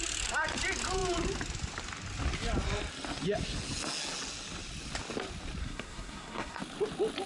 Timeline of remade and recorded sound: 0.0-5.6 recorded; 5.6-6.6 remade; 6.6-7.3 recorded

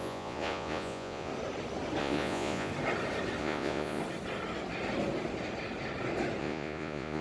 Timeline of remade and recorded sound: 0.0-1.3 remade; 1.3-2.0 recorded; 2.0-2.7 remade; 2.7-3.4 recorded; 3.4-4.0 remade; 4.0-6.4 recorded; 6.4-7.2 remade

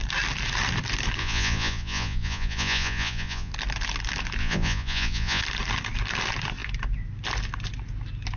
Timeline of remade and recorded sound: 0.0-1.2 recorded; 1.2-3.5 remade; 3.5-4.4 recorded; 4.4-5.4 remade; 5.4-8.4 recorded

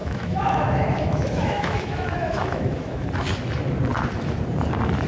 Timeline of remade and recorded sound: 0.0-3.1 remade; 3.1-5.1 recorded